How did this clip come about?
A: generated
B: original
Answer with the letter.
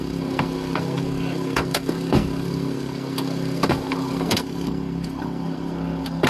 A